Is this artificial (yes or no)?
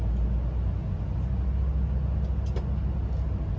no